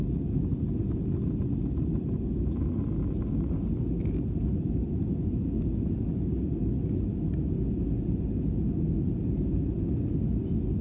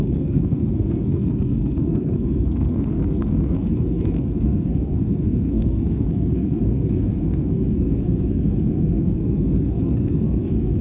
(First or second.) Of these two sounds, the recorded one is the first